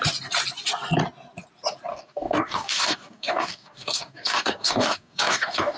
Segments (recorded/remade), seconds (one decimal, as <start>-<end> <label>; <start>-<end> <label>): 0.0-1.9 recorded; 1.9-5.8 remade